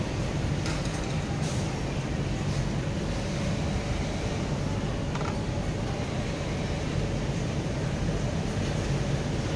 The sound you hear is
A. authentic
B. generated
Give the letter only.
A